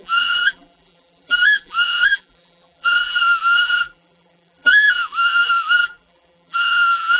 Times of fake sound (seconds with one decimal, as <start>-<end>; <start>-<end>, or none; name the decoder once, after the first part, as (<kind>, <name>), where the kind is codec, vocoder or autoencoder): 0.0-7.2 (vocoder, BigVGAN v2)